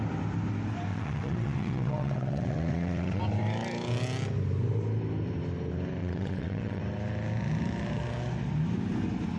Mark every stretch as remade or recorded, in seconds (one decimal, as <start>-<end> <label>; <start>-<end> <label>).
0.0-0.9 recorded; 0.9-3.2 remade; 3.2-6.0 recorded; 6.0-6.8 remade; 6.8-9.4 recorded